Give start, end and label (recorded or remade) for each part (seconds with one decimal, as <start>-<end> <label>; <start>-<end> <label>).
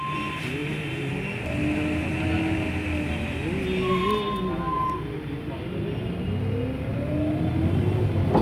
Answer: 0.0-8.4 recorded